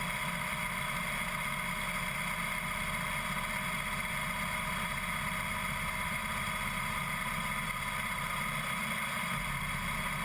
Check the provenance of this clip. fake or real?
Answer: real